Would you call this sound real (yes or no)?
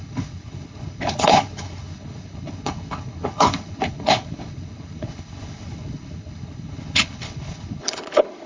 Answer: no